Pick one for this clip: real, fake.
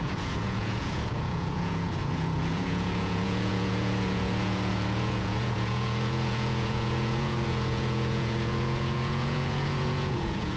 fake